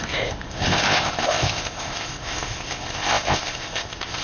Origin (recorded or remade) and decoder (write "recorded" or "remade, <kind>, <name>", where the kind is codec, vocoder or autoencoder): remade, codec, ZipCodec